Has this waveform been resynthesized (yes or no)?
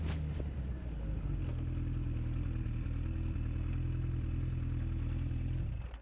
no